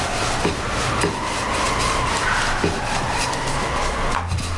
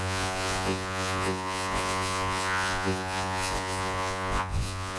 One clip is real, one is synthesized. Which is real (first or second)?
first